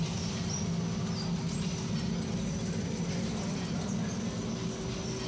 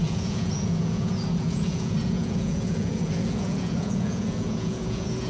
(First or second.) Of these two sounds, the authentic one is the first